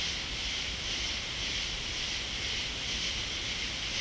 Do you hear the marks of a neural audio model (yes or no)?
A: yes